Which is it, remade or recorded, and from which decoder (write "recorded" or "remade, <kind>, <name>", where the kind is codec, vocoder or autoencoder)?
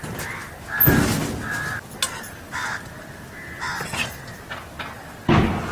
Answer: recorded